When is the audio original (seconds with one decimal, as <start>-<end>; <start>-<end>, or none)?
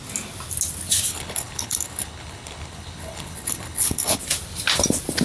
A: 0.0-1.1; 4.2-5.2